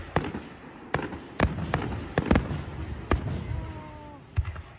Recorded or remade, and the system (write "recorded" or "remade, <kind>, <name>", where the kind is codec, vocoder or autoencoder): recorded